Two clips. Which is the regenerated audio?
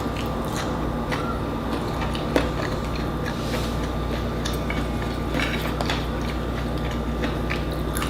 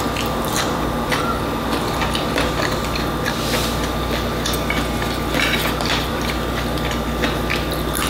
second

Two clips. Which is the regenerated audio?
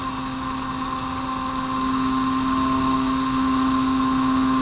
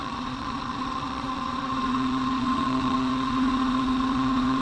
second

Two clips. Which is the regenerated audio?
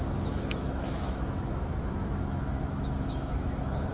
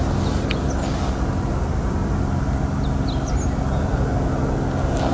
first